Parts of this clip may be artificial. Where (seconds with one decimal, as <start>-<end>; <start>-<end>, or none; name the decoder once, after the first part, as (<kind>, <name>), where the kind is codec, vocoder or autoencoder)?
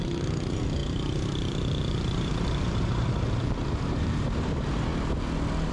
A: 0.0-4.9 (vocoder, BigVGAN v2)